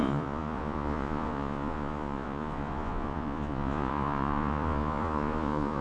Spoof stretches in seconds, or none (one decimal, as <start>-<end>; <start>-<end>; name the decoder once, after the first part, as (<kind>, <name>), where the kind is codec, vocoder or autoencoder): 0.0-5.8 (vocoder, Vocos)